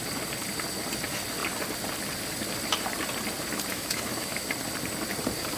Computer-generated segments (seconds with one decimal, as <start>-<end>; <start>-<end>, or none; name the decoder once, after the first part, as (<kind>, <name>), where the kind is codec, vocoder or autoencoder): 3.7-4.5 (autoencoder, DAC-VAE)